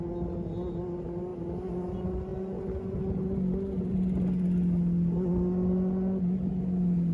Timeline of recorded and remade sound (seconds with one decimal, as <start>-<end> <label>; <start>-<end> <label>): 0.0-7.1 recorded